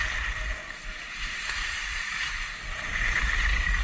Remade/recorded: recorded